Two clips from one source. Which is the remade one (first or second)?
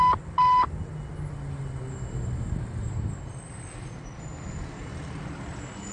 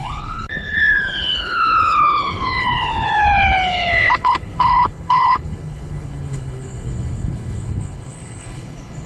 second